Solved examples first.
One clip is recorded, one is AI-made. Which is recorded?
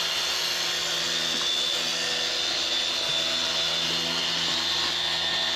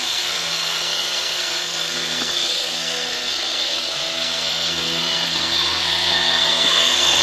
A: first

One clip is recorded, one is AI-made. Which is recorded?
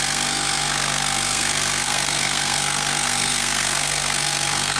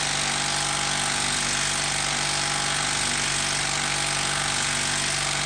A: second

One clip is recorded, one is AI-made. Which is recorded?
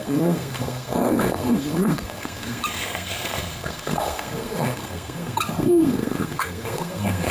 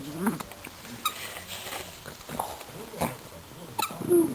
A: second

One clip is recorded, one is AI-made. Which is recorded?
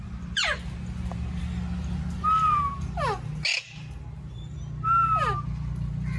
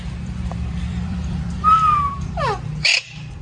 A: first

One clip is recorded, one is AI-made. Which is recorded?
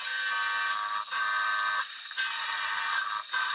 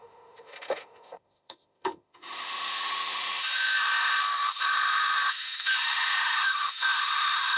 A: first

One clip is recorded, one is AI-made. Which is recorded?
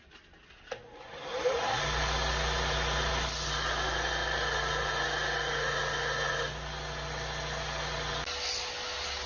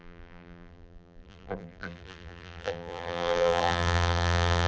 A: first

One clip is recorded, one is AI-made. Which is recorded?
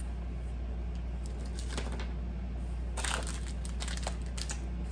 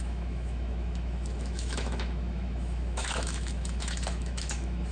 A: first